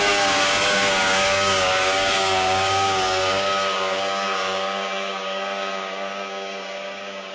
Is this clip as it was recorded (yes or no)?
no